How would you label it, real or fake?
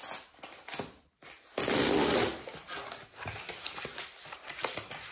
real